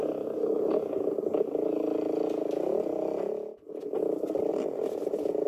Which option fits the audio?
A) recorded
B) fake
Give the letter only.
A